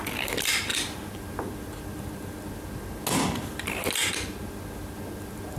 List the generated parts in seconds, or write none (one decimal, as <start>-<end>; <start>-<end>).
none